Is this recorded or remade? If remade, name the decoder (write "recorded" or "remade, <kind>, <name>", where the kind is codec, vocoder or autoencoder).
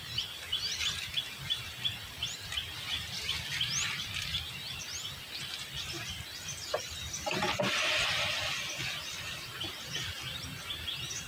recorded